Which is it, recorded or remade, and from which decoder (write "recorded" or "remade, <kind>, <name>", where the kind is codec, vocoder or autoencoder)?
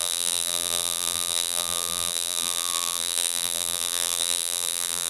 remade, vocoder, BigVGAN v2